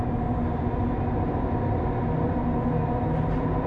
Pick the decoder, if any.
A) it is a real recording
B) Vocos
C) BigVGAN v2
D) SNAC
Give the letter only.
A